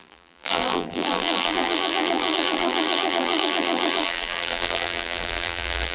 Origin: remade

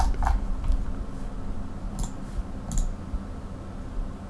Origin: recorded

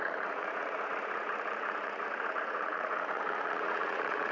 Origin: remade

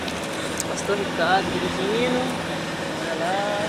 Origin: recorded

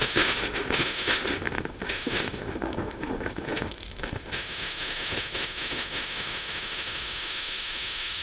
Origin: remade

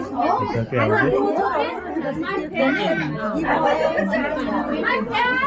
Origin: recorded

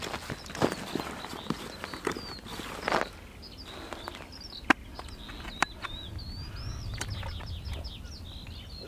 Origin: recorded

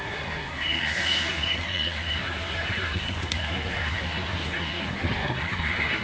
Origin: remade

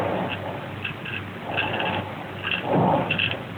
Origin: recorded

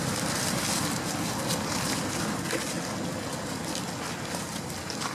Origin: recorded